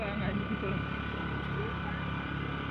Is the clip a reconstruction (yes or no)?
no